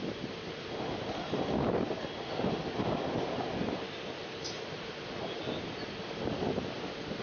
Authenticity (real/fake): real